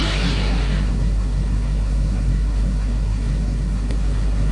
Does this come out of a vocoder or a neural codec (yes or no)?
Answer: yes